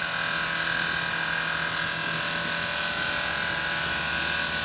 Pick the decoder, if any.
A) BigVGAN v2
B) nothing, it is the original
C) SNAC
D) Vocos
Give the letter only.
B